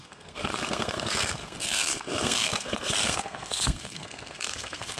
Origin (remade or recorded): remade